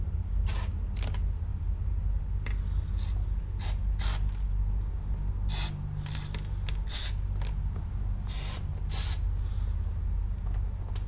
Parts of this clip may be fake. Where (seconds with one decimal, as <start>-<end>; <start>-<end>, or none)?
none